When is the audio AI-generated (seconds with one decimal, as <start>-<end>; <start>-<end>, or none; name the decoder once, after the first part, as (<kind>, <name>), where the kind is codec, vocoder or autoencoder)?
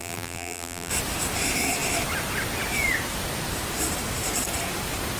0.0-0.9 (vocoder, BigVGAN v2)